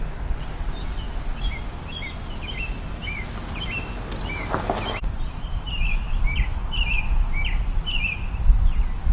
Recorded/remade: recorded